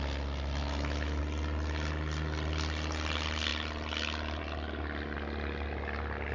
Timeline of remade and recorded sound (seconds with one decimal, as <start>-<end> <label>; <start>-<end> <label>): 0.0-0.6 recorded; 0.6-1.2 remade; 1.2-6.3 recorded